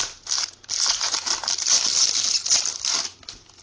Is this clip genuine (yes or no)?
yes